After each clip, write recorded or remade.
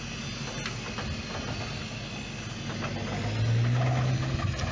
recorded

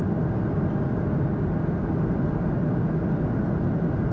recorded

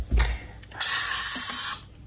recorded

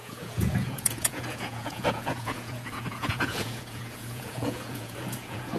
remade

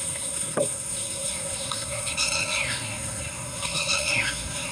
remade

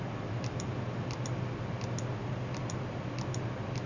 recorded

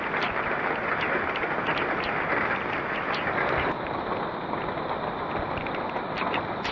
recorded